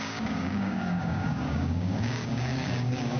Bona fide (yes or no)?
no